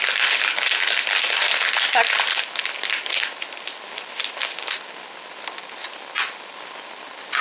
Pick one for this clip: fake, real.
real